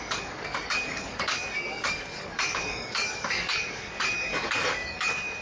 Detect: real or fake fake